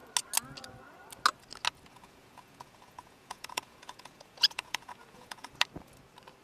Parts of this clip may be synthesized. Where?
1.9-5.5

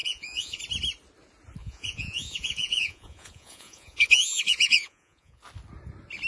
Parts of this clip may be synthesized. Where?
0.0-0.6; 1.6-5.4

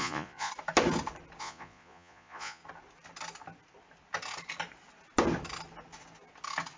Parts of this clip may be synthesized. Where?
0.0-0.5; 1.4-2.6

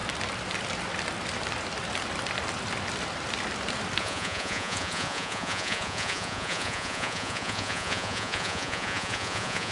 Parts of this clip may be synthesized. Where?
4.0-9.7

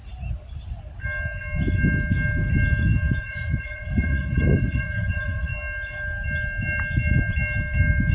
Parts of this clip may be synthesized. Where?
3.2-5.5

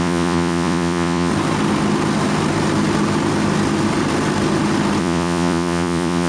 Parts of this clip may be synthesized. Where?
0.0-1.3; 5.0-6.3